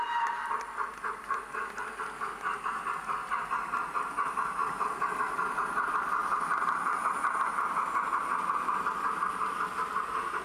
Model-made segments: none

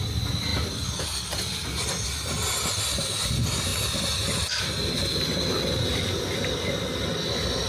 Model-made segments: none